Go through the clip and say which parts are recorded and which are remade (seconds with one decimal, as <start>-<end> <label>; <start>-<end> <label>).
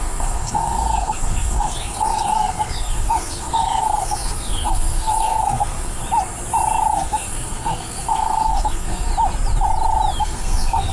0.0-6.0 remade; 6.0-6.9 recorded; 6.9-9.1 remade; 9.1-10.2 recorded; 10.2-10.9 remade